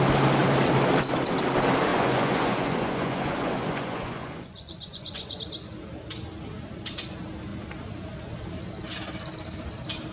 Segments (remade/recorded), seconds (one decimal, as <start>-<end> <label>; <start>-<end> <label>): 0.0-1.9 recorded; 1.9-5.4 remade; 5.4-10.1 recorded